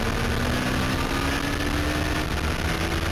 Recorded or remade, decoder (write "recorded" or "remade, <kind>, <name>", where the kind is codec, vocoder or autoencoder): recorded